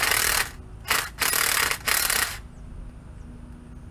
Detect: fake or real real